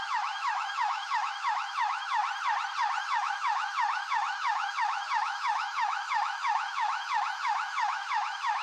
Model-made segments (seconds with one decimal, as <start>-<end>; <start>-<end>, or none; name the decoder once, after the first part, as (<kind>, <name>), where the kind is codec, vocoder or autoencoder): 0.0-2.2 (autoencoder, DAC-VAE); 3.0-8.6